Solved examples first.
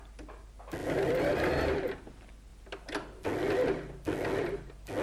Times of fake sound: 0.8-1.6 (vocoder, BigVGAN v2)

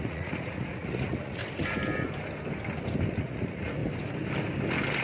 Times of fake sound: 0.0-1.4 (vocoder, Vocos); 3.1-3.8

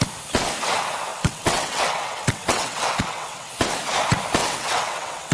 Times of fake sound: 1.1-3.5 (vocoder, WaveNeXt); 4.4-5.3

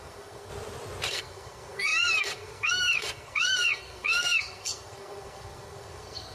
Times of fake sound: 0.0-0.5 (codec, SNAC); 1.1-6.3

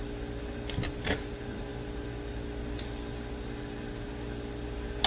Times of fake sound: none